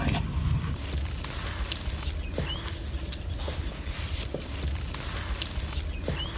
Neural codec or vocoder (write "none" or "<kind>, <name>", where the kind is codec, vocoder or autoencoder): none